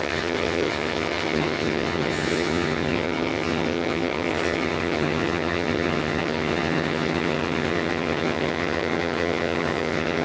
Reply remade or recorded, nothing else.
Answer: remade